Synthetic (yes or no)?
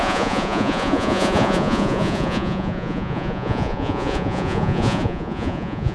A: yes